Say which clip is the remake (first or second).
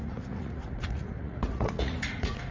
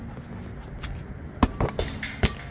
first